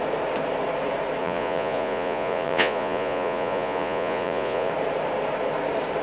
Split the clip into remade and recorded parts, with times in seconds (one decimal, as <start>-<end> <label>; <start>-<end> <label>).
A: 0.0-1.2 recorded; 1.2-4.7 remade; 4.7-6.0 recorded